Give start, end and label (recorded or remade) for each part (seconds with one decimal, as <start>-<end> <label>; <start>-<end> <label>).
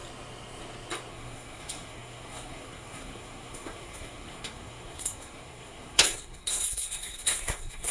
0.0-1.1 recorded; 1.1-7.9 remade